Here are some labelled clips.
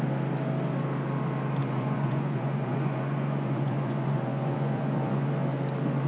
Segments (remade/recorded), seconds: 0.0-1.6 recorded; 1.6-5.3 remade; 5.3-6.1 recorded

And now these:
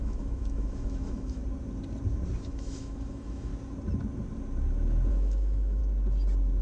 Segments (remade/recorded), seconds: 0.0-1.4 remade; 1.4-2.4 recorded; 2.4-3.5 remade; 3.5-5.1 recorded; 5.1-5.8 remade; 5.8-6.6 recorded